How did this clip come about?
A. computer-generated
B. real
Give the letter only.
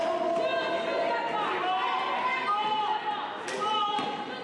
B